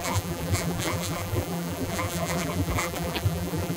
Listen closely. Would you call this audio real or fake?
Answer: fake